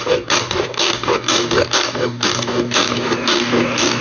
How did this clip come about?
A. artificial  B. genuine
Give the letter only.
A